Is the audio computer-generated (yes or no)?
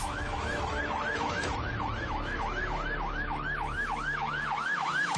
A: yes